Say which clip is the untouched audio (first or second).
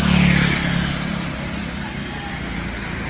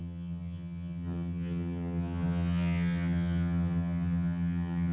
first